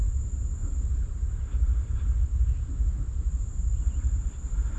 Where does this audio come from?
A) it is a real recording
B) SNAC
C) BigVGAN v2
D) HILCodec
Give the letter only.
C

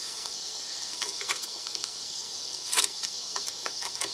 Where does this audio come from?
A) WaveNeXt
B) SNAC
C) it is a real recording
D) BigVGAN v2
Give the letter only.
B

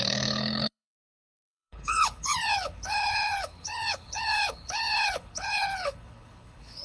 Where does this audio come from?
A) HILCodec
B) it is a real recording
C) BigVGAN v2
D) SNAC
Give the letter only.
A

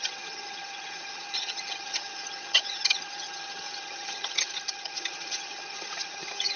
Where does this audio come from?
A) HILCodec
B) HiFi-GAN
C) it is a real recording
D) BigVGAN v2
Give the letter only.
B